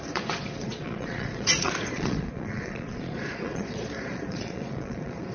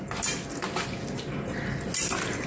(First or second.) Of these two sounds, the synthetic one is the first